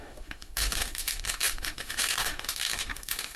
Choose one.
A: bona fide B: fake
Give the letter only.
B